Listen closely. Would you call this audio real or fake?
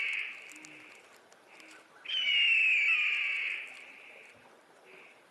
real